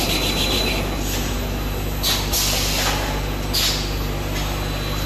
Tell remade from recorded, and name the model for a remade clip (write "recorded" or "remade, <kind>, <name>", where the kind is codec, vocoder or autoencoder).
recorded